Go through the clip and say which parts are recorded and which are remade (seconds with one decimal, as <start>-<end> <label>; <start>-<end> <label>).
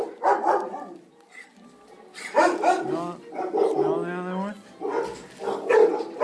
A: 0.0-6.2 recorded